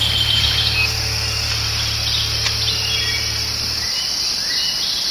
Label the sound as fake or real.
real